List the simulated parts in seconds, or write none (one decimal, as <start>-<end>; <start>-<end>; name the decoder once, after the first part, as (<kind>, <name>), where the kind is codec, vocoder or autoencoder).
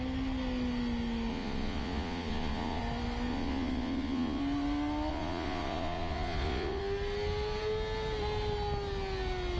1.3-2.8 (vocoder, Vocos); 3.3-4.4; 5.1-6.8